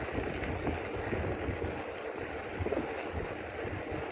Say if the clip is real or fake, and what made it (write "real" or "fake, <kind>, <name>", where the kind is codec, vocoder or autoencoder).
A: real